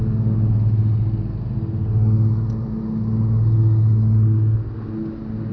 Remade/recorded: recorded